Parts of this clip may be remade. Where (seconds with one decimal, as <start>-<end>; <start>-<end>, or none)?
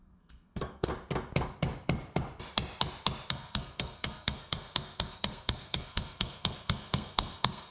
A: 0.0-0.9; 3.3-7.7